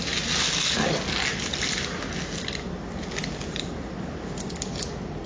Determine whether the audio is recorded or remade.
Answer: recorded